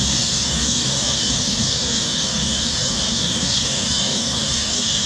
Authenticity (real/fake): fake